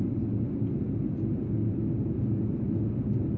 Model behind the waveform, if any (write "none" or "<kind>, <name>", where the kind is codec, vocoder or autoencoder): none